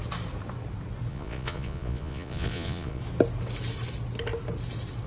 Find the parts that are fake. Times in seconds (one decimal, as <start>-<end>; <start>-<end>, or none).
1.1-3.0

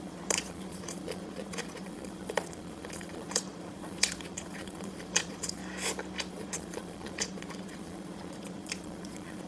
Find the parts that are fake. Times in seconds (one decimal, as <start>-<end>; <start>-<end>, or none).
0.0-5.6; 6.3-9.5